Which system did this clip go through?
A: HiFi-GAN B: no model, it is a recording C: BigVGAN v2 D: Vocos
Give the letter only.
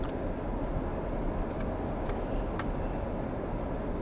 B